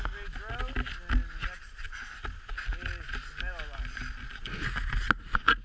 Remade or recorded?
recorded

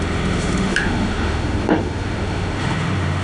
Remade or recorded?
remade